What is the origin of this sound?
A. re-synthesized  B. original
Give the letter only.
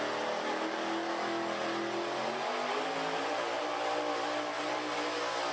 B